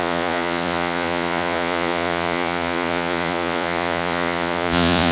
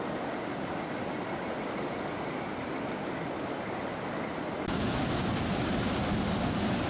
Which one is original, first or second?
second